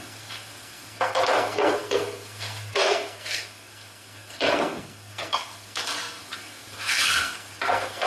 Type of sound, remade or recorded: remade